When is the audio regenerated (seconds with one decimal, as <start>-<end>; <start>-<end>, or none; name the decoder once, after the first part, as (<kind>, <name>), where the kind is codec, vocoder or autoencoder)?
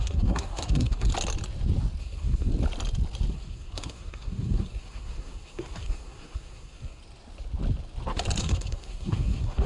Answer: 0.0-1.1 (codec, SNAC); 2.0-2.5; 3.3-7.0; 8.4-9.7